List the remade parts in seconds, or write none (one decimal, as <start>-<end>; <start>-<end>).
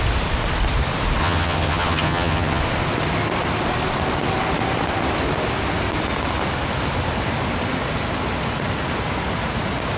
1.2-2.6